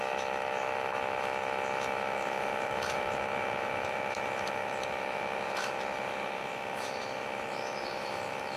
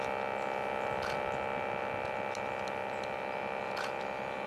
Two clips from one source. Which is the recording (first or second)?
second